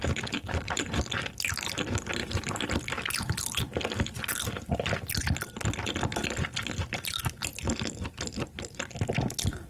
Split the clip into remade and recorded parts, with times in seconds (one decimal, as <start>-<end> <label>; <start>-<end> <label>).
0.0-2.2 recorded; 2.2-3.1 remade; 3.1-4.3 recorded; 4.3-5.1 remade; 5.1-6.4 recorded; 6.4-7.2 remade; 7.2-9.7 recorded